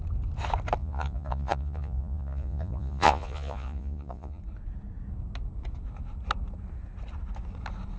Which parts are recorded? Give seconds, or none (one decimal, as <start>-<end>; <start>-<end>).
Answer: 0.0-0.8; 4.4-8.0